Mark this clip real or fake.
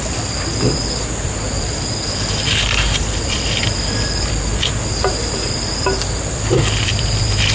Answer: fake